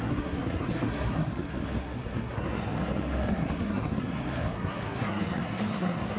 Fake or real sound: fake